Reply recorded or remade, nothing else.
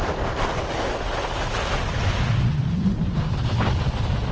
recorded